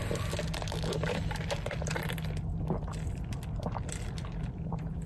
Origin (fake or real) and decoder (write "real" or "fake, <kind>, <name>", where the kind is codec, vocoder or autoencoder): fake, vocoder, BigVGAN v2